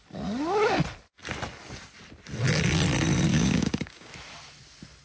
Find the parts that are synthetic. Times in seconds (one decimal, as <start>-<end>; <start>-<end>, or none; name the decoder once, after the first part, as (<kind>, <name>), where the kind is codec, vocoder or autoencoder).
3.3-4.1 (codec, DAC)